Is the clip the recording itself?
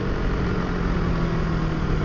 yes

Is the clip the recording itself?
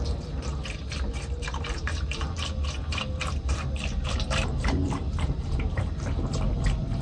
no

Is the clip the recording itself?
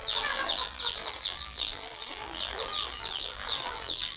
no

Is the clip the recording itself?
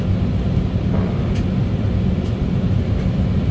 yes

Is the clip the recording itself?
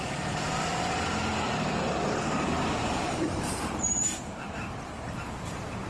no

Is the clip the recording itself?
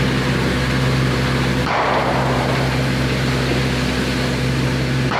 yes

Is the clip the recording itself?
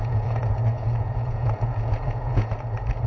no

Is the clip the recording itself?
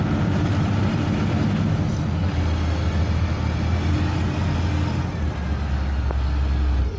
yes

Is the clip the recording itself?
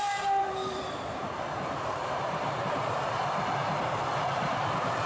no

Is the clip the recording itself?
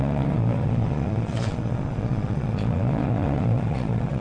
no